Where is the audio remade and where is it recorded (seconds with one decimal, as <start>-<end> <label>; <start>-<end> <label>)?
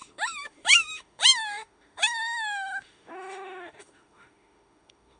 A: 0.0-5.2 remade